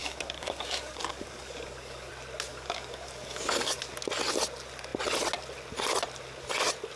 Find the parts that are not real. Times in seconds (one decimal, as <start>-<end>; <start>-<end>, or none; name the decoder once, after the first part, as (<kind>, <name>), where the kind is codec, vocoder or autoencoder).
0.0-2.1 (codec, DAC); 2.5-3.8